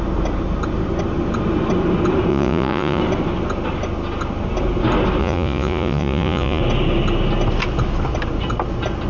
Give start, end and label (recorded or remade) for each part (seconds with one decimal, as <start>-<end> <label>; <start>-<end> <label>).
0.0-2.3 recorded; 2.3-3.0 remade; 3.0-5.2 recorded; 5.2-6.6 remade; 6.6-9.1 recorded